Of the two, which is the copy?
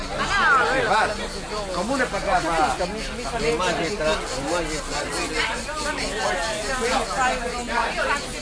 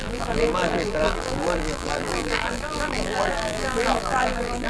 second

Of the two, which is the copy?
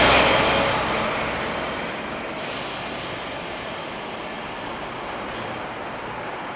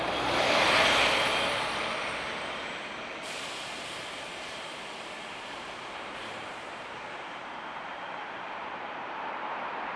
second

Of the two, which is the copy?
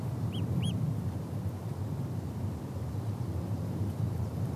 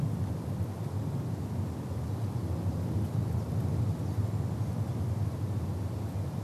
first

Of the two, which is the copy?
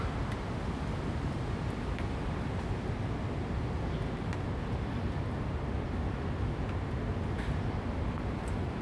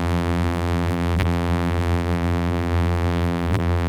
second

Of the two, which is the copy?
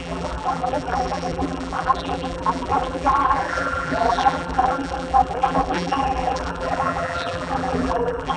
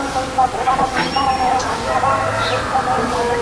first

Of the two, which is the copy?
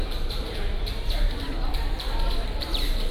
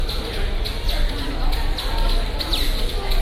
first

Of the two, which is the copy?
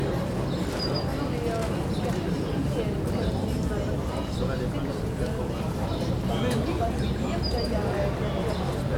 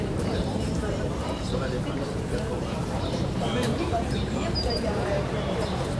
second